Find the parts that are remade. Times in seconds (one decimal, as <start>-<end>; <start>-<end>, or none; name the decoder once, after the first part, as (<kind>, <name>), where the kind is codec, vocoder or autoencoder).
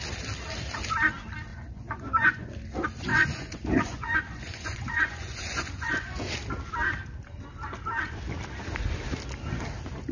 1.5-2.5 (vocoder, Vocos); 3.1-6.3